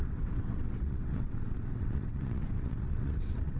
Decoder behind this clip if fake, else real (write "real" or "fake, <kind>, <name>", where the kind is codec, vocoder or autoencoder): fake, vocoder, WaveNeXt